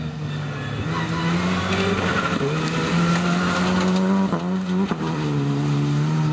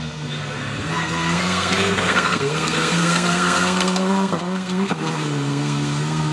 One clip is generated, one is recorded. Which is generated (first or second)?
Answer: second